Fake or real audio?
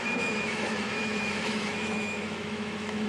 fake